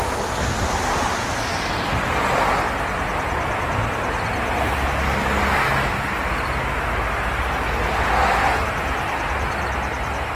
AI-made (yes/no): no